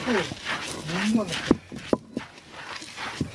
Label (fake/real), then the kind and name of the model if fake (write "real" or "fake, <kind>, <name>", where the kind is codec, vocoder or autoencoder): real